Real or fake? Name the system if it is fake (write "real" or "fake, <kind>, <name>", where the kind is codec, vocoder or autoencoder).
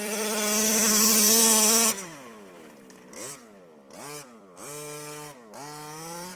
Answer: fake, vocoder, BigVGAN v2